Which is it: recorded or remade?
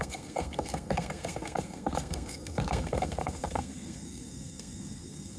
remade